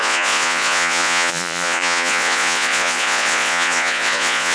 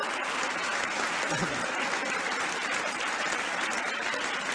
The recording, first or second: second